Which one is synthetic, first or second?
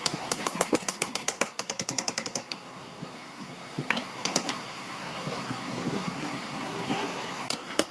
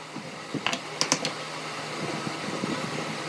first